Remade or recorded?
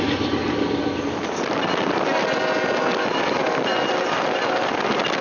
recorded